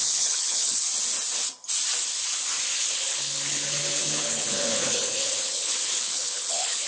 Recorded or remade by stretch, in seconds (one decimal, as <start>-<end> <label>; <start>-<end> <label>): 0.0-0.9 remade; 0.9-2.9 recorded; 2.9-6.9 remade